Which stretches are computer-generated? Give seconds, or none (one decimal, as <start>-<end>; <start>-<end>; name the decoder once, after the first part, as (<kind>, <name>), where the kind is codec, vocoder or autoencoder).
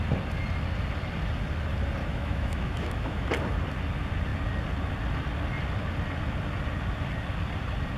2.0-3.3 (autoencoder, DAC-VAE)